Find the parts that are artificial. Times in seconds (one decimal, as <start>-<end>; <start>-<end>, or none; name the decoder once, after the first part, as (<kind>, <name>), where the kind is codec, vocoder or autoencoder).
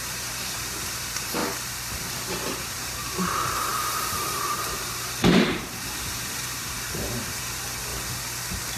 0.0-1.4 (vocoder, BigVGAN v2); 2.7-7.9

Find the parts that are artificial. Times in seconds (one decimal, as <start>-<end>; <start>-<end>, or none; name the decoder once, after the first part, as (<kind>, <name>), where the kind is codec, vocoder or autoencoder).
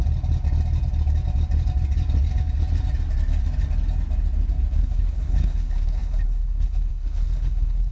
4.7-7.9 (codec, HILCodec)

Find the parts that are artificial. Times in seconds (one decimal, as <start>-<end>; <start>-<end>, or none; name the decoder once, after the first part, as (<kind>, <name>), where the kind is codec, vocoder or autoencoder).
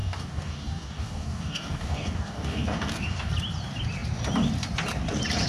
0.0-3.3 (codec, DAC)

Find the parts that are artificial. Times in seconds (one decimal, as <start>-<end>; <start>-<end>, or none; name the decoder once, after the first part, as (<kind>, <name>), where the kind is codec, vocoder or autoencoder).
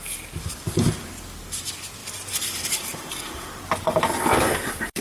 none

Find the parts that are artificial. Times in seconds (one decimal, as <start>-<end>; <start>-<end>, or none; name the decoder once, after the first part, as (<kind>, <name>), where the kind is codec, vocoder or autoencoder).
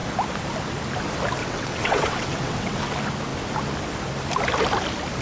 1.4-2.8 (vocoder, WaveNeXt)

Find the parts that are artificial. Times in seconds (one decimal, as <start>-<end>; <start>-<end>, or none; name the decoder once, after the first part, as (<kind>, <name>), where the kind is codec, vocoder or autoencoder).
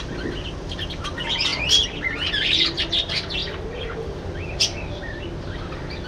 none